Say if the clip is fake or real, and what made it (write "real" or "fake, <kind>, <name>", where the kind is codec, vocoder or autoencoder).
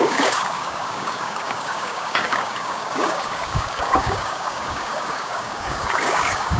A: fake, codec, DAC